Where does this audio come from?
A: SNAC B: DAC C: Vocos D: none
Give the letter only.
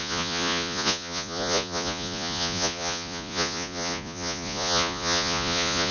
C